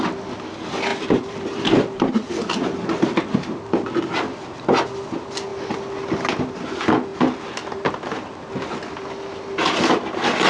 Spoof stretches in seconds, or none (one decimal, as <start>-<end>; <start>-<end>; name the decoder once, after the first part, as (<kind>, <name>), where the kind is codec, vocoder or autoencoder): 0.9-2.3 (vocoder, BigVGAN v2)